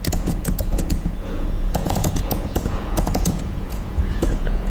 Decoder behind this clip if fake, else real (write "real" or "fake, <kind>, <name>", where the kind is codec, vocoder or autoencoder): fake, vocoder, Vocos